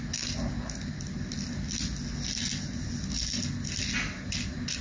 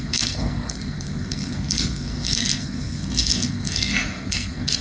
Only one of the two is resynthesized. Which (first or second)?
second